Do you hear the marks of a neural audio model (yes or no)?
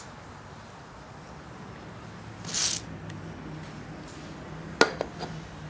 no